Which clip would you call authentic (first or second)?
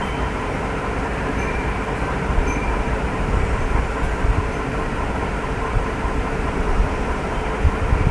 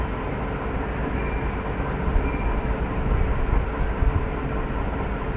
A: second